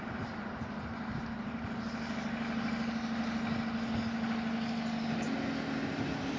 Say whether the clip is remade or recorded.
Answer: recorded